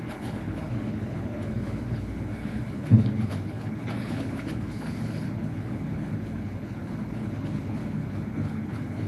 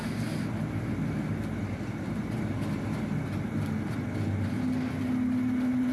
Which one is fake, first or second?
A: first